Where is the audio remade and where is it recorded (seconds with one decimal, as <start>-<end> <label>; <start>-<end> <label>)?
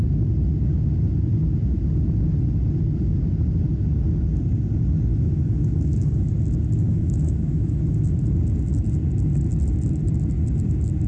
0.0-5.1 recorded; 5.1-6.3 remade; 6.3-6.9 recorded; 6.9-7.8 remade; 7.8-11.1 recorded